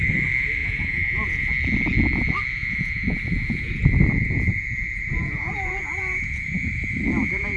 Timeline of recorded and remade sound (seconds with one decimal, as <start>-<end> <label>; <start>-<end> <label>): 0.0-0.6 recorded; 0.6-1.5 remade; 1.5-2.6 recorded; 2.6-7.6 remade